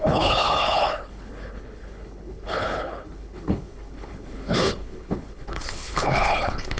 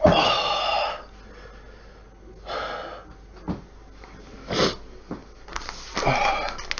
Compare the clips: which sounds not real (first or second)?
first